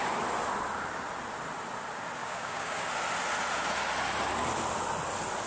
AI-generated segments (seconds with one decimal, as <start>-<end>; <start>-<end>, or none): 2.2-2.9